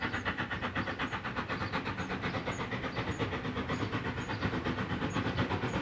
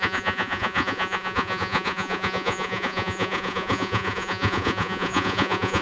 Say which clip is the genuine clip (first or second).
first